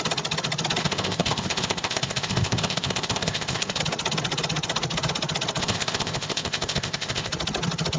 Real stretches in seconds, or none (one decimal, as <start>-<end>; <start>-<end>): 0.0-0.8; 3.8-5.6; 7.3-8.0